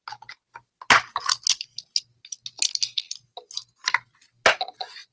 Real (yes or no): yes